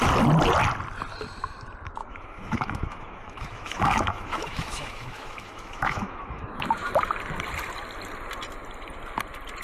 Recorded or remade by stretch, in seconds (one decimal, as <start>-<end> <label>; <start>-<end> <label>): 0.0-2.0 recorded; 2.0-6.9 remade; 6.9-9.6 recorded